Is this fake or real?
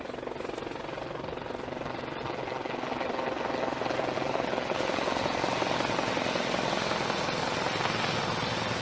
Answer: real